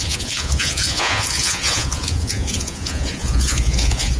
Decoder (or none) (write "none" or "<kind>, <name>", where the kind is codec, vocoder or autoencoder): vocoder, Vocos